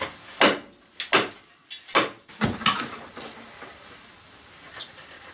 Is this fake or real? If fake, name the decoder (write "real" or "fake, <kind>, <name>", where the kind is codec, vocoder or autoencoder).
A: real